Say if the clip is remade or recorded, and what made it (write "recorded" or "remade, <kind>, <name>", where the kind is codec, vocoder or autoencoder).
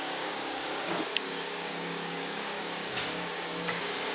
remade, codec, DAC